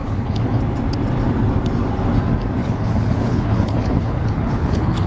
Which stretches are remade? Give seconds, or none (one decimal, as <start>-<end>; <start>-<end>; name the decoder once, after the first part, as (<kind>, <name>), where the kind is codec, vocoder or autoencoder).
0.0-0.6 (codec, HILCodec); 2.6-5.1

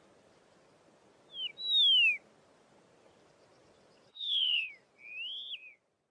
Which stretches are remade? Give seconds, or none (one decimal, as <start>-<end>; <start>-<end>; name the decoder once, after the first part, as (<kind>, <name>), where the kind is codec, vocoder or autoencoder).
4.1-4.7 (codec, HILCodec)